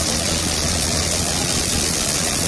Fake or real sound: fake